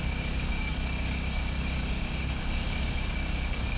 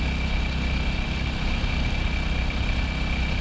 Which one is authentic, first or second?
second